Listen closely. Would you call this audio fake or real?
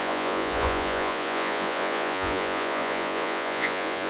fake